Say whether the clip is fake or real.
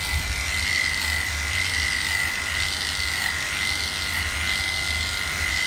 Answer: real